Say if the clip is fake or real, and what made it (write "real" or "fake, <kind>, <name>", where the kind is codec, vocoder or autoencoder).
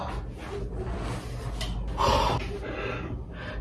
real